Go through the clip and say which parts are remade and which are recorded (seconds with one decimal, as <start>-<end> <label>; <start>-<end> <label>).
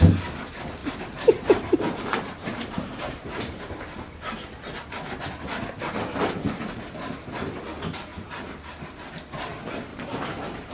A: 0.0-0.8 recorded; 0.8-5.2 remade; 5.2-9.9 recorded; 9.9-10.7 remade